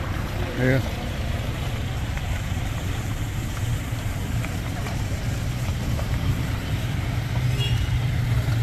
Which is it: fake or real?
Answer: fake